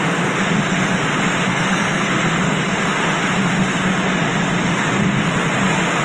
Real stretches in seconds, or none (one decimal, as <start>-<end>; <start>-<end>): 0.0-1.5; 2.6-6.0